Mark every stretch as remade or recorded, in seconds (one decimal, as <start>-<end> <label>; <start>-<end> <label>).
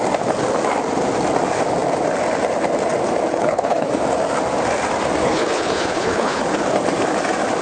0.0-3.3 recorded; 3.3-3.9 remade; 3.9-5.2 recorded; 5.2-6.4 remade; 6.4-7.6 recorded